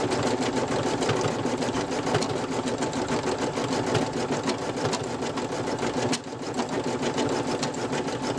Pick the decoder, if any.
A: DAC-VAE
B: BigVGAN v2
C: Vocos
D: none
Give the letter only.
D